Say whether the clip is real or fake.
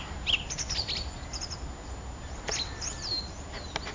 real